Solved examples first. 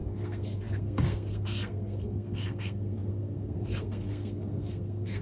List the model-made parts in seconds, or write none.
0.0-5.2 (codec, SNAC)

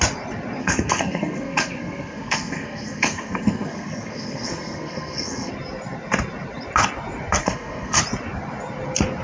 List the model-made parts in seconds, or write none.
0.6-5.5 (codec, SNAC); 7.4-8.0

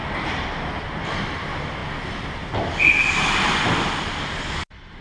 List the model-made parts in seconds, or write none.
none

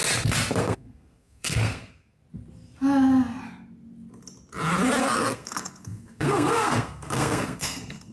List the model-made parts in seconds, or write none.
0.6-2.2 (codec, SNAC); 5.0-8.1